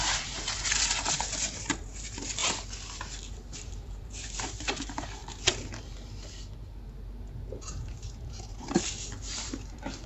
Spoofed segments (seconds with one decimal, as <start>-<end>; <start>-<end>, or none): 0.0-2.4; 3.6-5.2; 7.6-10.1